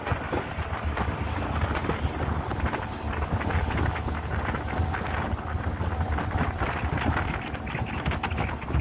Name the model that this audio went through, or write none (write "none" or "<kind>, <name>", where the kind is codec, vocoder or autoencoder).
none